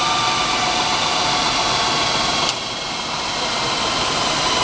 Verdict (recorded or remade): recorded